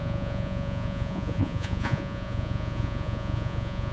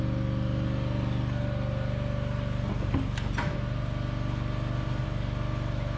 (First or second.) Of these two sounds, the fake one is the first